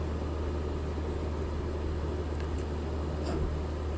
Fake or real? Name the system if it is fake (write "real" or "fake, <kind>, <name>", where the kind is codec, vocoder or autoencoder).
real